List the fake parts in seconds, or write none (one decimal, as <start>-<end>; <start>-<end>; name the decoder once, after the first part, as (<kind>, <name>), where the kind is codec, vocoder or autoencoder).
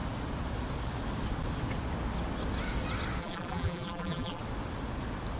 3.2-4.4 (vocoder, BigVGAN v2)